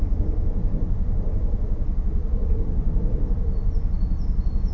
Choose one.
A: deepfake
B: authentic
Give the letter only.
B